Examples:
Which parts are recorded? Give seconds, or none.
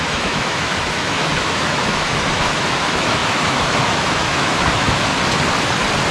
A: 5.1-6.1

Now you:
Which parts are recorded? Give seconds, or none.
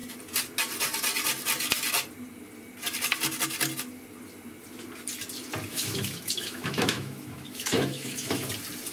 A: 0.0-5.7; 8.5-8.9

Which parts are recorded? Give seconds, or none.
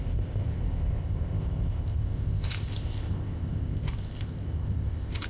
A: none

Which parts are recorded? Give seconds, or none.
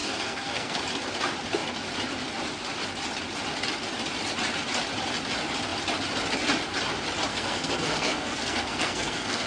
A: 0.8-7.3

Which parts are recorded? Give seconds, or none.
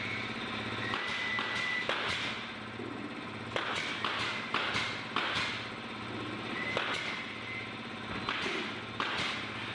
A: 0.0-9.7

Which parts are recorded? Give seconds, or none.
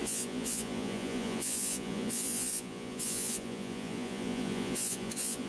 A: none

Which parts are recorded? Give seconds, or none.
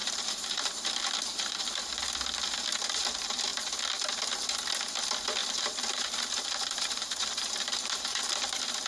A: 2.0-5.4; 8.2-8.9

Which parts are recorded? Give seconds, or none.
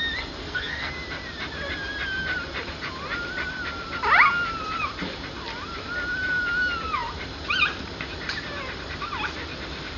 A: 0.0-0.4; 0.9-10.0